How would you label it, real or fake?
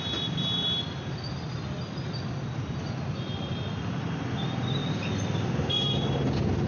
real